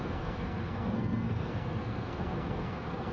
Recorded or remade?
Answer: remade